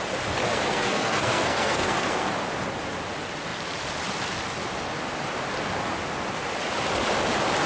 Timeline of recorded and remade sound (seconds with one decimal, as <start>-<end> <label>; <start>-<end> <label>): 0.0-0.5 recorded; 0.5-2.3 remade; 2.3-7.7 recorded